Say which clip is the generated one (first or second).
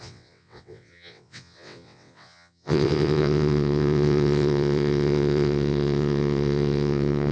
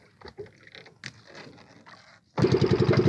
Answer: first